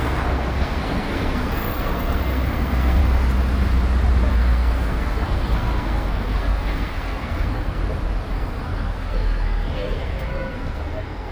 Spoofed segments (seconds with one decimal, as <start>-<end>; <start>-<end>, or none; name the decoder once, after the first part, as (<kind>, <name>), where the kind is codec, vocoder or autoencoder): 0.0-3.0 (codec, SNAC); 4.3-7.8; 8.3-11.3